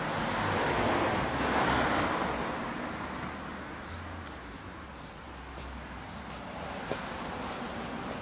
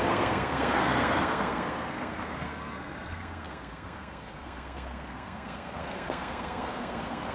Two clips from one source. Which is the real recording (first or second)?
first